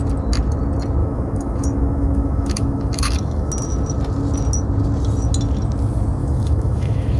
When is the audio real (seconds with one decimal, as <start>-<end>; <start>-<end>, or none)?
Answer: 0.0-1.0; 3.5-6.2